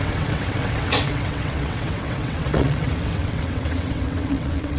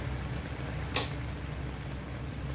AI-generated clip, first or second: first